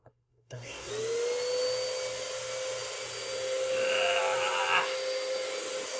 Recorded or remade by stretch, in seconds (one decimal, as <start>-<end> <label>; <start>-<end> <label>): 0.0-0.9 remade; 0.9-6.0 recorded